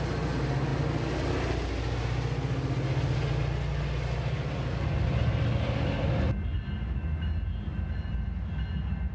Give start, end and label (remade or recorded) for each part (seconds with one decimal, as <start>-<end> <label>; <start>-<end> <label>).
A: 0.0-9.1 recorded